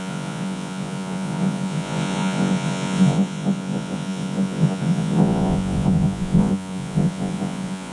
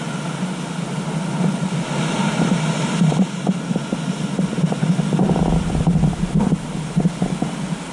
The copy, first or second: first